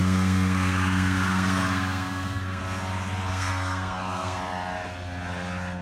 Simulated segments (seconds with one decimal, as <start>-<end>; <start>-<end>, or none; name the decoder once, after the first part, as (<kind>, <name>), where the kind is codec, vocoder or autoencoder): 0.0-2.6 (codec, SNAC); 3.3-4.4